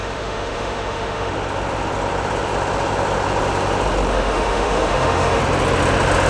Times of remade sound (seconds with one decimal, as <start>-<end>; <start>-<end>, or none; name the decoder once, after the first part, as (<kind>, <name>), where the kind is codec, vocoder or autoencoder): 0.0-1.3 (autoencoder, DAC-VAE); 4.1-5.4